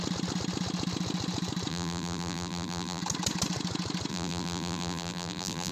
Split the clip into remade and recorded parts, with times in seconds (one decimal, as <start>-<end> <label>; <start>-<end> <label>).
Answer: 0.0-1.7 recorded; 1.7-3.0 remade; 3.0-4.1 recorded; 4.1-5.7 remade